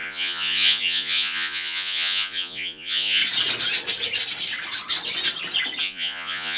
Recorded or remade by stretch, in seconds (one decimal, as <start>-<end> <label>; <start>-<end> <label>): 0.0-3.2 remade; 3.2-5.8 recorded; 5.8-6.6 remade